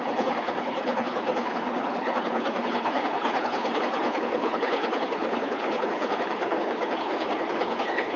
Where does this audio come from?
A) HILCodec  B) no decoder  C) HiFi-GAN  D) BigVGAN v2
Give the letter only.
A